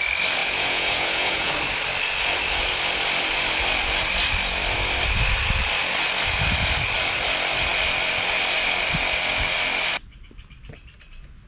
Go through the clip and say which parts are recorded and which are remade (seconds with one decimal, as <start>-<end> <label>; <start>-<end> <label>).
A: 0.0-0.4 recorded; 0.4-1.5 remade; 1.5-11.5 recorded